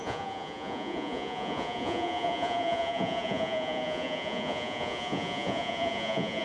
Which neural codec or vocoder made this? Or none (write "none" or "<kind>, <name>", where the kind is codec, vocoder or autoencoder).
vocoder, Vocos